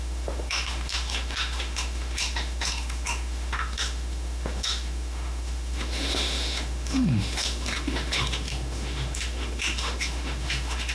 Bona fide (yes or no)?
no